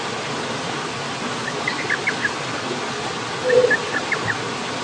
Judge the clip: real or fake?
real